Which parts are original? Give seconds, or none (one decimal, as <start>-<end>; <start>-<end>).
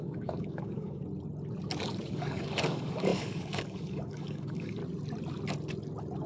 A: 1.0-2.1; 4.8-6.3